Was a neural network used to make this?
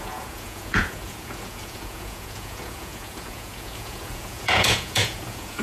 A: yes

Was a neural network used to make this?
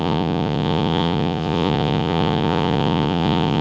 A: yes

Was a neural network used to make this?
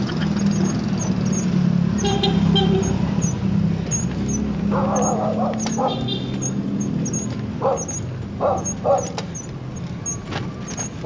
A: no